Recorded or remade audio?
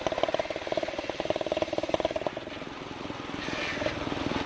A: recorded